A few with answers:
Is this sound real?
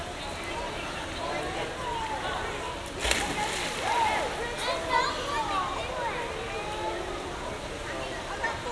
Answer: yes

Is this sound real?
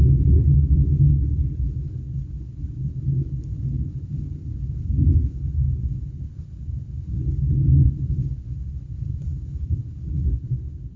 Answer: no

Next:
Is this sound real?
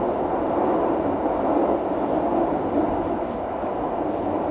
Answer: yes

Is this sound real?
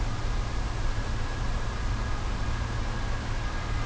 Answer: yes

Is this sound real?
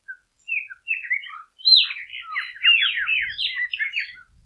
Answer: yes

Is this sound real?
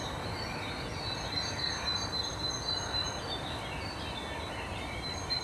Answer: yes